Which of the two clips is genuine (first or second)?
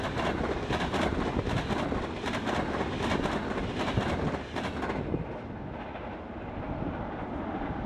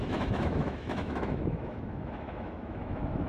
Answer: first